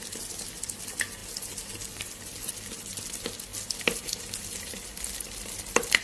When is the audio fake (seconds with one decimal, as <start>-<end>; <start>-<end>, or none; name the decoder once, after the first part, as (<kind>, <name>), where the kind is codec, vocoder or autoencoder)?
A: none